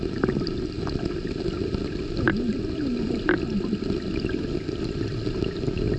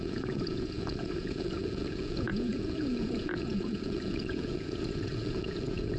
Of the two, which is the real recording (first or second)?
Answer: first